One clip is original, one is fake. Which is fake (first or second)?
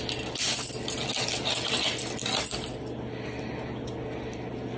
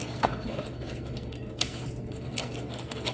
second